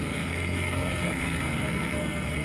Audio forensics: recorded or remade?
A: remade